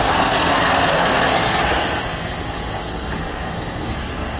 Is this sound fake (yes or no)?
yes